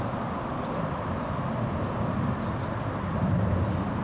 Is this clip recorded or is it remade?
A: recorded